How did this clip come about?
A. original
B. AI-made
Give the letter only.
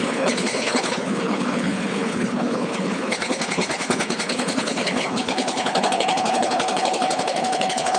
B